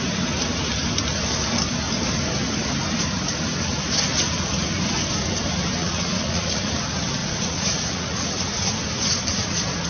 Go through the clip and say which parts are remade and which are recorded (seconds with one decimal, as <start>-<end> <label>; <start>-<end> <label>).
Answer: 0.0-5.8 recorded; 5.8-6.7 remade; 6.7-7.2 recorded; 7.2-8.7 remade; 8.7-9.9 recorded